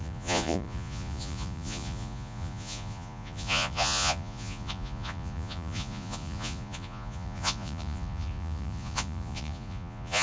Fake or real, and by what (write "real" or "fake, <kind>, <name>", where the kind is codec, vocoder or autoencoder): fake, vocoder, Vocos